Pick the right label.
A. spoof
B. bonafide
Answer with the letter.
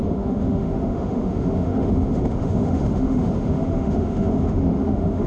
A